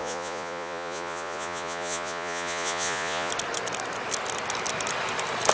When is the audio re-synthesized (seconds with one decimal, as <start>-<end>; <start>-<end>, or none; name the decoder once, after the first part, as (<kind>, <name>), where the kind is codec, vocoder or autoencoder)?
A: 0.0-3.3 (vocoder, Vocos)